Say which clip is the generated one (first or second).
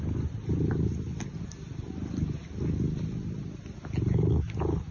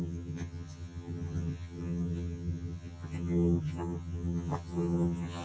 second